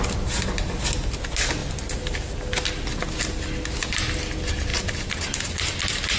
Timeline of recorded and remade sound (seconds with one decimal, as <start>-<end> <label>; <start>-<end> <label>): 0.0-6.2 recorded